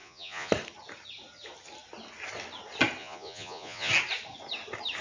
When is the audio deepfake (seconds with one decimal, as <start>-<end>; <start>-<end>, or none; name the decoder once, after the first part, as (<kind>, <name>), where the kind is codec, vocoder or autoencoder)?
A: 0.0-0.5 (vocoder, Vocos); 3.0-3.9